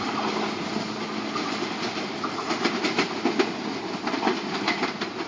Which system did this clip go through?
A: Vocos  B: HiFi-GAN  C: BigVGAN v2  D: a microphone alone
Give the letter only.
D